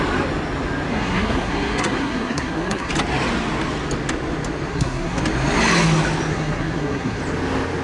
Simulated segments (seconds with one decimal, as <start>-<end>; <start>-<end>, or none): 0.9-2.9; 4.7-5.2; 6.3-7.2